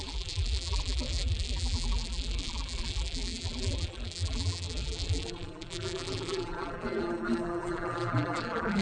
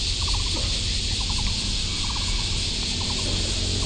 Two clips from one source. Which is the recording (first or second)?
second